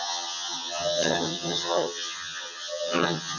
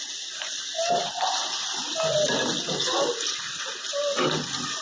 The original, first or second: second